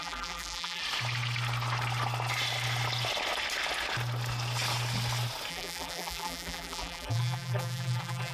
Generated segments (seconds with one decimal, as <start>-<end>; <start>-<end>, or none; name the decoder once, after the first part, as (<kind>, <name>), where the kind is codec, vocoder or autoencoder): 0.0-0.8 (vocoder, BigVGAN v2); 5.5-8.3